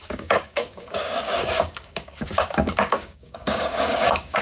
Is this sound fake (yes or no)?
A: yes